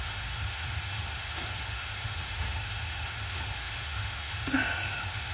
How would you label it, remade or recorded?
remade